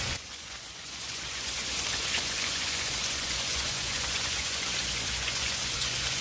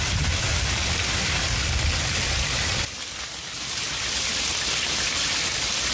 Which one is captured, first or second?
second